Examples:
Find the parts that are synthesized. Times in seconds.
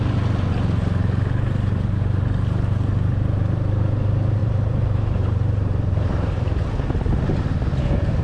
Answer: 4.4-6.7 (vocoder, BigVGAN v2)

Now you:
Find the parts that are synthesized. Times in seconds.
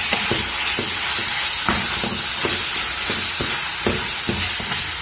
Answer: none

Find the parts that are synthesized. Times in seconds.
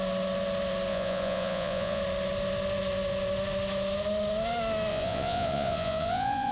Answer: 0.9-2.0 (vocoder, Vocos); 4.9-6.5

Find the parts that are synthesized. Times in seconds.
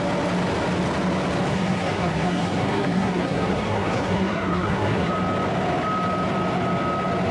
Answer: 1.5-5.1 (codec, SNAC)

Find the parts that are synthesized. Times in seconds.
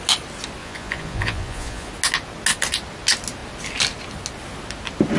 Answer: 0.6-1.9 (vocoder, Vocos)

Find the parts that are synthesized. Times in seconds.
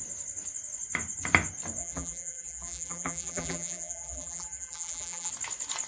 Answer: 1.8-5.3 (vocoder, BigVGAN v2)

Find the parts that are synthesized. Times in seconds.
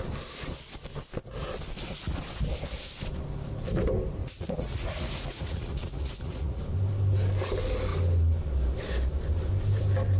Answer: 4.2-6.6 (vocoder, Vocos)